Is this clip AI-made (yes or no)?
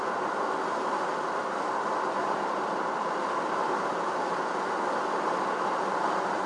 no